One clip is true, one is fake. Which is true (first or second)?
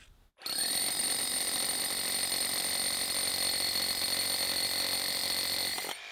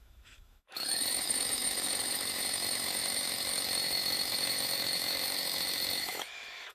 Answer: first